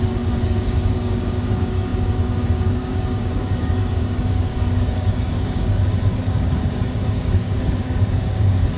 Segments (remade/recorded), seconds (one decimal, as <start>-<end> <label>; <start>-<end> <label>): 0.0-8.8 remade